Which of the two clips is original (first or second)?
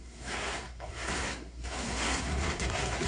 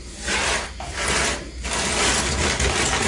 second